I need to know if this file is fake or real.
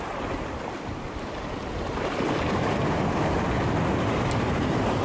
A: real